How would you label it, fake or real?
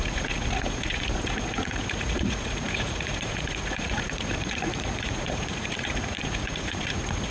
fake